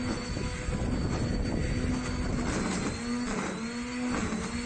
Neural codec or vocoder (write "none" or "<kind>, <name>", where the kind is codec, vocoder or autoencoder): none